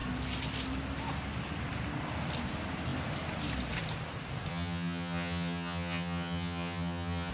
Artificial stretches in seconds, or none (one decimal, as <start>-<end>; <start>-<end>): 4.5-7.3